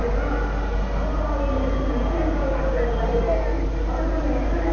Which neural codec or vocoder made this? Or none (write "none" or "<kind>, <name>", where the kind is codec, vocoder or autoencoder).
none